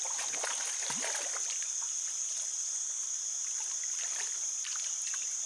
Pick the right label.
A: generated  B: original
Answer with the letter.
B